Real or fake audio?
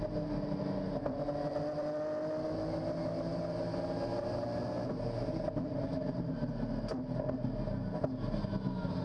real